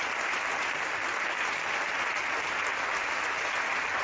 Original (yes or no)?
yes